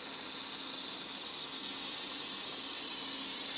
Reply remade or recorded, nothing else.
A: recorded